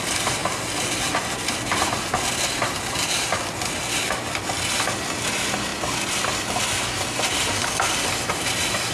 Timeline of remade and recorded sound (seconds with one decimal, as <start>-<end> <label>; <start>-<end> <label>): 0.0-8.9 recorded